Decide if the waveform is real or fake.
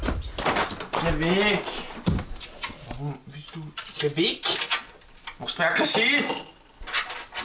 real